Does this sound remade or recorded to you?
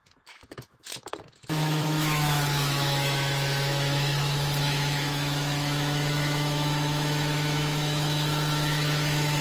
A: remade